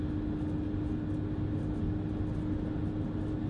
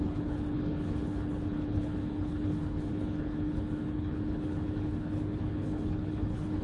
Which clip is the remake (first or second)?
second